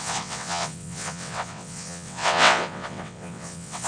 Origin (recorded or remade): remade